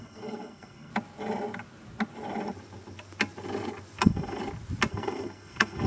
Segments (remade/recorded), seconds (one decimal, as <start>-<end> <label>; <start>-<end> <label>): 0.0-0.9 remade; 0.9-4.0 recorded; 4.0-4.4 remade; 4.4-4.9 recorded; 4.9-5.9 remade